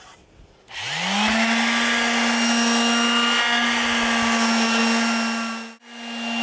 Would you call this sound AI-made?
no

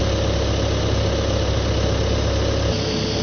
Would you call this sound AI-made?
no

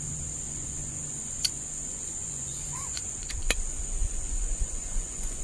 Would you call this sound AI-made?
yes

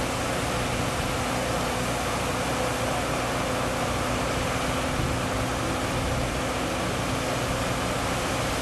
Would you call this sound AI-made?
no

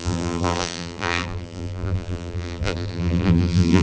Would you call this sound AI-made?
yes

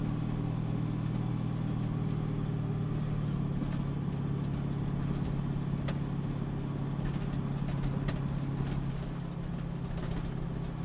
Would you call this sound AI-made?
no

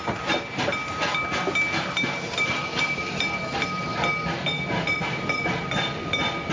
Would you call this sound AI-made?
no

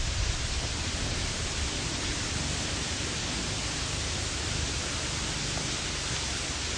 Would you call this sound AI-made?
yes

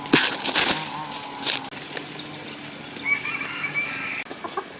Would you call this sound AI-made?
no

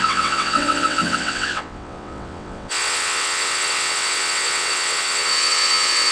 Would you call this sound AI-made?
yes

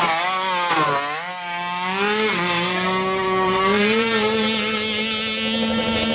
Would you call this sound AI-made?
no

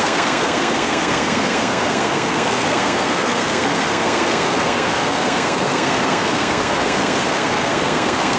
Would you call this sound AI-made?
yes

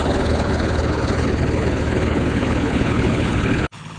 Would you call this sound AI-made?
yes